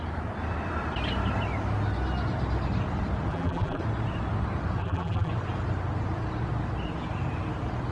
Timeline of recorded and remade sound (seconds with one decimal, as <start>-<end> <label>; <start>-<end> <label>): 0.0-3.3 recorded; 3.3-3.8 remade; 3.8-4.8 recorded; 4.8-5.3 remade; 5.3-7.9 recorded